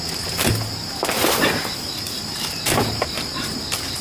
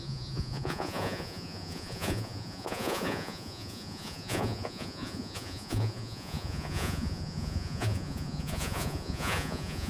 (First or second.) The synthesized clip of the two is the second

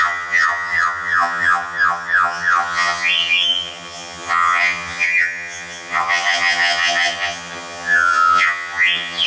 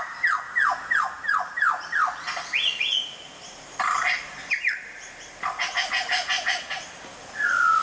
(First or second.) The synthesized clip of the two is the first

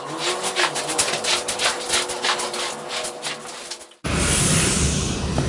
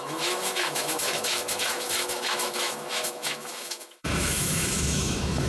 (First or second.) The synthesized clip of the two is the second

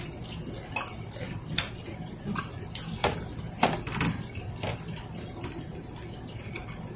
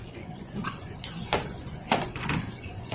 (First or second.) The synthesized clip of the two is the second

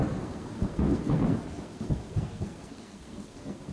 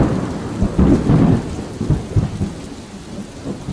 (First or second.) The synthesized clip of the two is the first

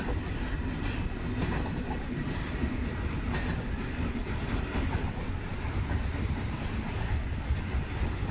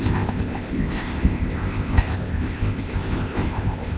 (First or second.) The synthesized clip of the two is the second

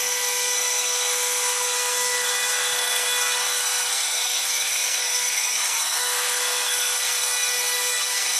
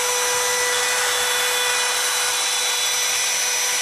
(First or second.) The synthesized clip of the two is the first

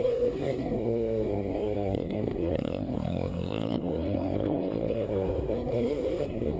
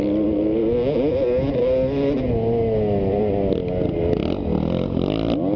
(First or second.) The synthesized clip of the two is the first